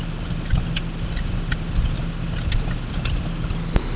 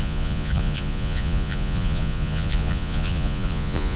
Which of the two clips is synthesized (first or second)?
second